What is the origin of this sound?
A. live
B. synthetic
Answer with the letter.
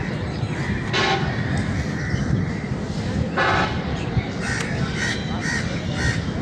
A